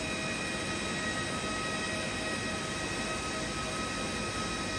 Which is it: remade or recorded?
recorded